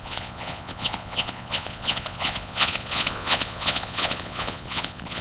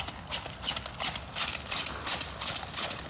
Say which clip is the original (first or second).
second